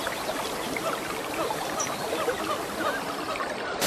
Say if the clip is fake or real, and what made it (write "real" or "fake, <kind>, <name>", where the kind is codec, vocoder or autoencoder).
real